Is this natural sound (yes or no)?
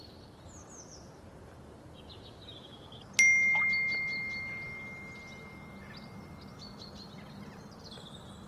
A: yes